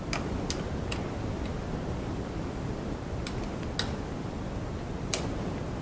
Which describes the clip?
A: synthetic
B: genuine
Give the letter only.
B